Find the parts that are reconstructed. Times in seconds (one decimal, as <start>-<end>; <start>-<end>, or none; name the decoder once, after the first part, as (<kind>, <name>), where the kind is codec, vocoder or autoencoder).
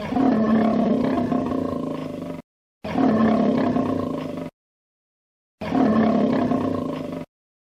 none